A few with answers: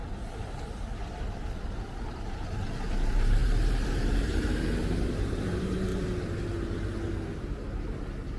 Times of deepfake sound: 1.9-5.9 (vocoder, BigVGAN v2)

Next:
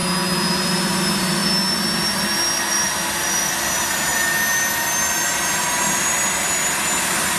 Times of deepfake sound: 0.6-1.4 (vocoder, BigVGAN v2); 2.7-4.1; 7.0-7.4

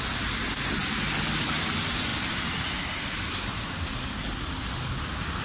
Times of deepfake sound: 0.8-1.7 (vocoder, BigVGAN v2); 2.1-3.4

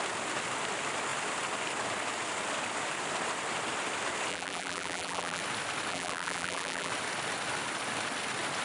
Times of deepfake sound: 4.3-5.4 (vocoder, BigVGAN v2); 5.9-6.9

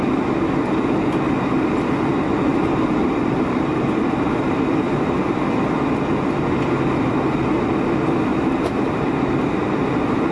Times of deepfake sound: 2.5-5.7 (vocoder, BigVGAN v2); 8.3-9.1

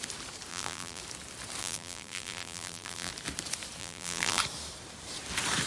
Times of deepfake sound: 0.5-1.0 (vocoder, BigVGAN v2); 1.6-3.1; 3.8-4.4